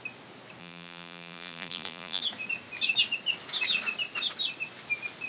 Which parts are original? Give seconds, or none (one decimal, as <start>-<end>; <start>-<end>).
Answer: 0.0-0.6; 2.2-5.3